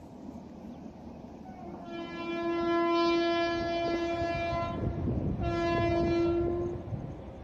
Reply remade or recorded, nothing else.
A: recorded